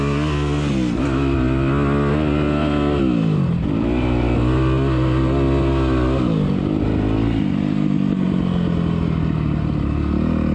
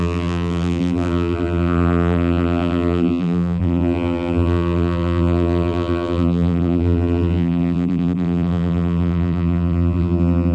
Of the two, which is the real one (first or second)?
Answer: first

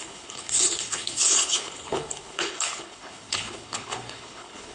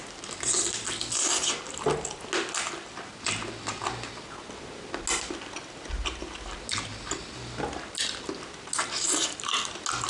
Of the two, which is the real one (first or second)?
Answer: second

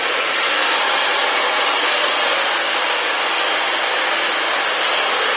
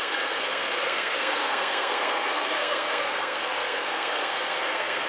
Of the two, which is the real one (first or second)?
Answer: first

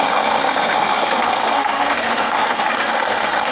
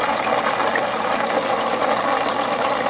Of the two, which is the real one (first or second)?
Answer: second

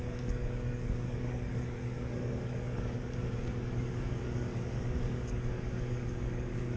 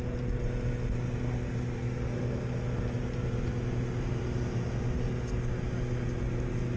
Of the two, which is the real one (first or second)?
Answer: second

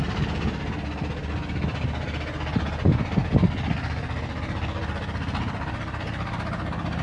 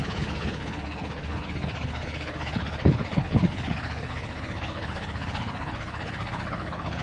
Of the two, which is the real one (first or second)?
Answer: first